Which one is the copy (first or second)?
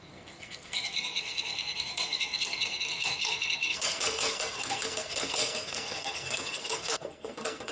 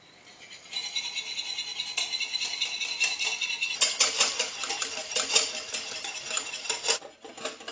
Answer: first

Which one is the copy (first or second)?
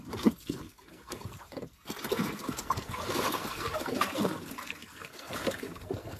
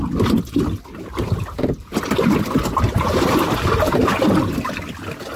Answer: first